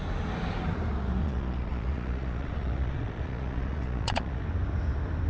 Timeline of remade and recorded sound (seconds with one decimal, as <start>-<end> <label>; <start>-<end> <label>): 0.0-1.2 recorded; 1.2-4.4 remade; 4.4-5.3 recorded